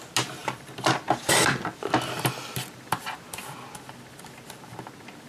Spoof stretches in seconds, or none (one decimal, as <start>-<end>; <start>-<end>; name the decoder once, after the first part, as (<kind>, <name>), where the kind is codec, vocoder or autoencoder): 0.4-3.2 (vocoder, BigVGAN v2)